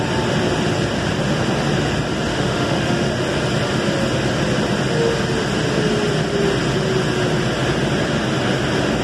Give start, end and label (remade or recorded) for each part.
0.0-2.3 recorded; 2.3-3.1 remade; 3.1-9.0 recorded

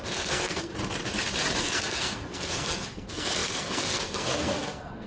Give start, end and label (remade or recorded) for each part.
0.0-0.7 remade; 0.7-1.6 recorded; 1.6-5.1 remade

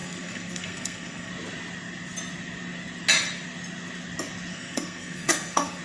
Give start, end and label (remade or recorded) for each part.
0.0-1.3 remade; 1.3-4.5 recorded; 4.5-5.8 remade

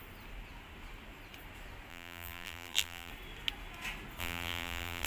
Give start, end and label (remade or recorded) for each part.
0.0-1.9 recorded; 1.9-3.1 remade; 3.1-4.2 recorded; 4.2-5.1 remade

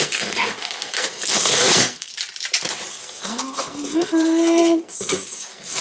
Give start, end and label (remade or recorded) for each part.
0.0-2.1 remade; 2.1-2.9 recorded; 2.9-5.8 remade

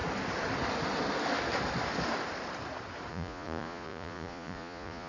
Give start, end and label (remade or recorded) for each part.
0.0-3.1 recorded; 3.1-5.1 remade

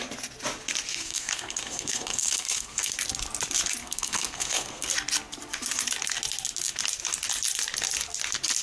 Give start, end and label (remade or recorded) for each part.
0.0-0.9 recorded; 0.9-2.9 remade; 2.9-3.8 recorded; 3.8-4.9 remade; 4.9-8.6 recorded